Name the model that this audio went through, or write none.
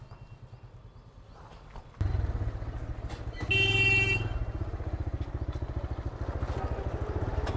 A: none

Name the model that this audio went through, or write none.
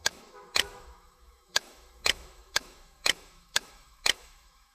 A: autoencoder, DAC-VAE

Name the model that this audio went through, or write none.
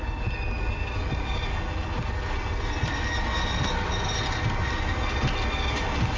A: none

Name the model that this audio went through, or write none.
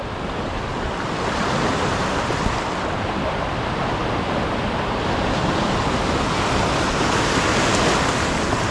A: none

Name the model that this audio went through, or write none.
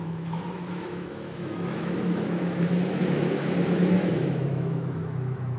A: autoencoder, DAC-VAE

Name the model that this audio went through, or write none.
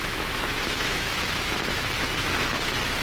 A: autoencoder, DAC-VAE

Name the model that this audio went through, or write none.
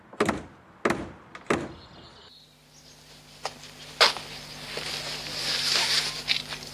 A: none